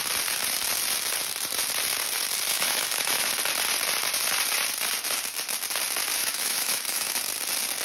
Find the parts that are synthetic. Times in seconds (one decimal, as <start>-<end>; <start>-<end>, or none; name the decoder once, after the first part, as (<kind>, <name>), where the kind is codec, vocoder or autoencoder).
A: 2.5-3.3 (autoencoder, DAC-VAE); 6.2-7.2